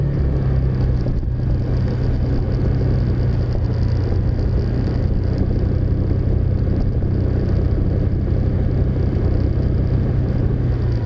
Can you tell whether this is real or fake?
real